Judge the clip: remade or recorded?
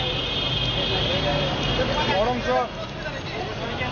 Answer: recorded